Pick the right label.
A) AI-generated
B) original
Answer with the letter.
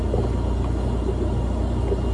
B